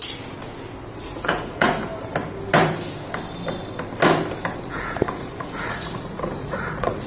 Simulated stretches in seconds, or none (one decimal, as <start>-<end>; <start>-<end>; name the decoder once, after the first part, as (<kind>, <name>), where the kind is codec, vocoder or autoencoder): 1.0-1.8 (vocoder, Vocos); 4.7-7.1